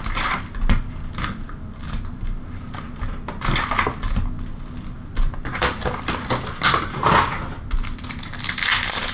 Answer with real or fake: real